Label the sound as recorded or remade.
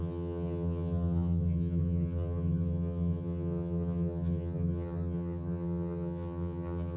remade